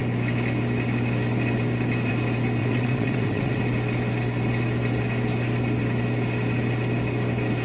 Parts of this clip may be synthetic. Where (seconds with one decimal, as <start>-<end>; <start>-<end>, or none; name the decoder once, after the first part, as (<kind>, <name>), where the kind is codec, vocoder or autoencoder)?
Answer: 2.6-3.6 (vocoder, WaveNeXt)